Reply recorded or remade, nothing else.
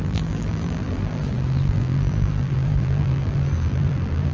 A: remade